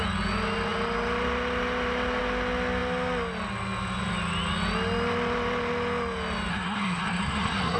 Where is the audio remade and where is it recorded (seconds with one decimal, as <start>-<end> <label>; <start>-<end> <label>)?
0.0-6.5 recorded; 6.5-7.8 remade